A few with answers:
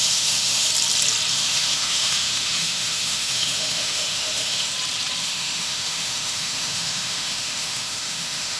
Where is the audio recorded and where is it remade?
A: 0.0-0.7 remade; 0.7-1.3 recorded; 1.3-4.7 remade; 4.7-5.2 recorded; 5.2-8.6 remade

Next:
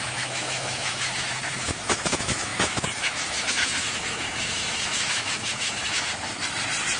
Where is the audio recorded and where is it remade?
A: 0.0-6.1 remade; 6.1-7.0 recorded

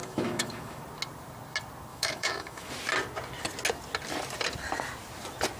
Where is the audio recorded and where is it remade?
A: 0.0-0.8 remade; 0.8-1.9 recorded; 1.9-2.7 remade; 2.7-5.6 recorded

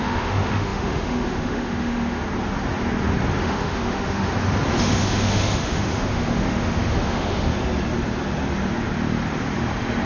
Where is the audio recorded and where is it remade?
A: 0.0-2.2 remade; 2.2-3.4 recorded; 3.4-4.3 remade; 4.3-4.8 recorded; 4.8-7.5 remade; 7.5-10.1 recorded

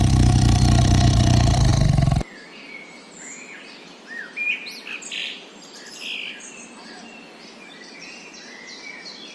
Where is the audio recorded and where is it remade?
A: 0.0-9.3 recorded

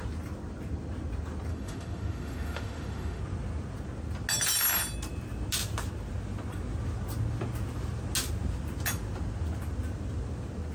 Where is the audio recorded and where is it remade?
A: 0.0-1.5 recorded; 1.5-3.2 remade; 3.2-10.7 recorded

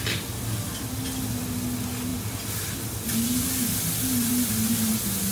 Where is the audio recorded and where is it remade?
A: 0.0-5.3 recorded

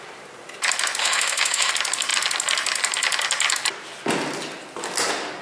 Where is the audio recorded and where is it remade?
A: 0.0-1.0 recorded; 1.0-1.7 remade; 1.7-5.4 recorded